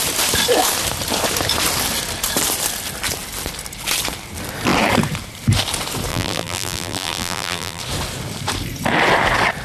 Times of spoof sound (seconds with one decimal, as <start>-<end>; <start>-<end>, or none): 6.1-7.8